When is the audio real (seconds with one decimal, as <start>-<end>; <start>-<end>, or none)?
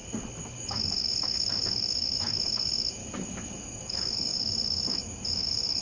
0.0-0.6; 3.0-3.6